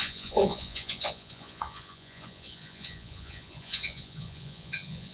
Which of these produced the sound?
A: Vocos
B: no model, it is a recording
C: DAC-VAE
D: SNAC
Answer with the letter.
A